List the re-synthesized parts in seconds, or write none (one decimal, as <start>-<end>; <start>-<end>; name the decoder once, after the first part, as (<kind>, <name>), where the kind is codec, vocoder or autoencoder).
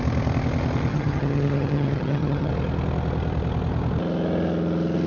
0.9-2.5 (vocoder, HiFi-GAN)